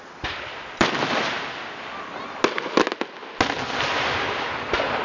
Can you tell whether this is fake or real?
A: real